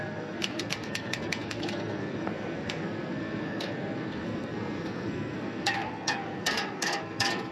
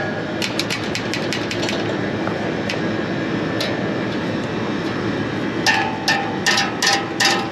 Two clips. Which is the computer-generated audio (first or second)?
first